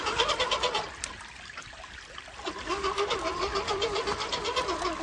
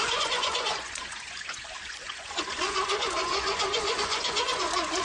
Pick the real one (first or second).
first